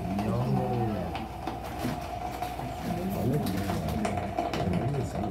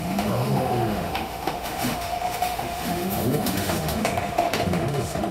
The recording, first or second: first